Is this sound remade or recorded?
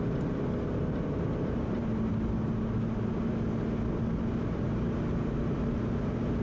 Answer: recorded